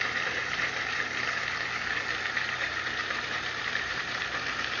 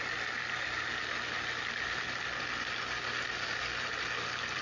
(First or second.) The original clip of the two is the second